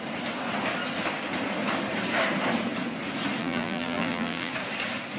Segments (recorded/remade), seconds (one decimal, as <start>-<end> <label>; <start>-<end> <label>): 0.0-3.4 recorded; 3.4-4.5 remade; 4.5-5.2 recorded